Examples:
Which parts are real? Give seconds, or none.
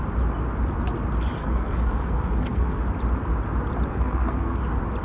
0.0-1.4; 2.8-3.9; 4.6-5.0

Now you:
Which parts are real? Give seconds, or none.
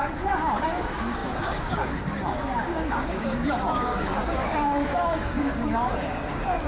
none